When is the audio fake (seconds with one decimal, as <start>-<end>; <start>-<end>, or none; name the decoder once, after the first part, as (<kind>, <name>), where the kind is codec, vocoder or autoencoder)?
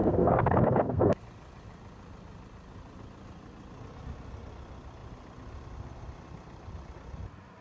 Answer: 0.0-1.2 (codec, SNAC)